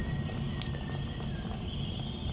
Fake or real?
real